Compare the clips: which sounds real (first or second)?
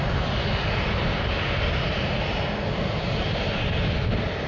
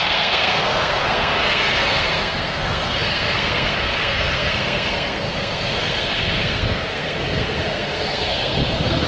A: first